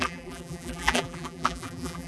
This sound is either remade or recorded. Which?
remade